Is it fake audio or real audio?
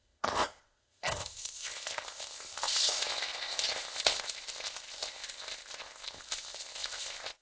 fake